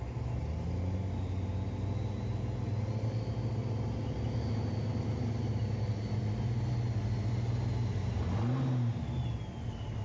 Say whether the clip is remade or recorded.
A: recorded